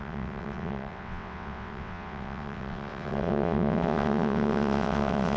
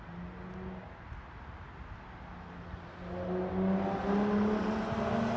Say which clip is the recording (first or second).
second